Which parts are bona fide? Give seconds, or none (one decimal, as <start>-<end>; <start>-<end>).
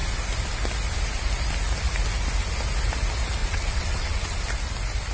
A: 0.0-3.4; 4.4-5.1